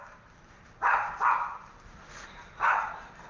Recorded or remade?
remade